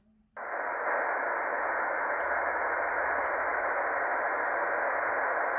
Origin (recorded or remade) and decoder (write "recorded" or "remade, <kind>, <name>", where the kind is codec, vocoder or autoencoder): recorded